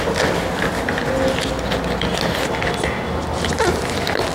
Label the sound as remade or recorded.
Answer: recorded